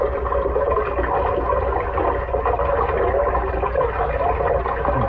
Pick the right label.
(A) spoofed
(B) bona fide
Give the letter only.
B